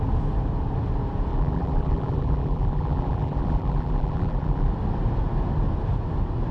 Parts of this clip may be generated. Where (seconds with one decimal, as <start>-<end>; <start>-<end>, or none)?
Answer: 1.3-4.7